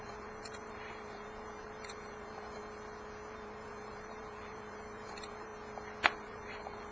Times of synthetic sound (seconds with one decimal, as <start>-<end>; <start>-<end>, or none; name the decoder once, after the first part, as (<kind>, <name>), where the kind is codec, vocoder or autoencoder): 0.0-2.6 (vocoder, BigVGAN v2); 3.3-5.5; 6.2-6.9